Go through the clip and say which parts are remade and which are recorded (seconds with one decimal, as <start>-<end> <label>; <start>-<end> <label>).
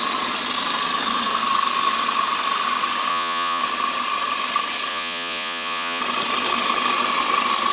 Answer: 0.0-3.1 recorded; 3.1-3.6 remade; 3.6-4.9 recorded; 4.9-6.0 remade; 6.0-7.7 recorded